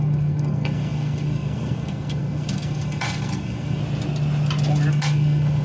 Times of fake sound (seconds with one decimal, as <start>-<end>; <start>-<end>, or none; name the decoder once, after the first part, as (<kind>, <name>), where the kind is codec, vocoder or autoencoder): 0.0-3.8 (codec, SNAC); 4.9-5.6